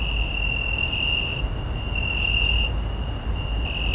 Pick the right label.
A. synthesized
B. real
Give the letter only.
B